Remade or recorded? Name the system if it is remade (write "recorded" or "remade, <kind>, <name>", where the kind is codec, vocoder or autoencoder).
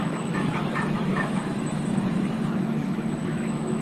remade, autoencoder, DAC-VAE